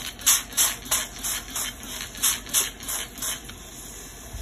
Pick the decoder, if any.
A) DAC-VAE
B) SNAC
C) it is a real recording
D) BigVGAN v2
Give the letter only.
C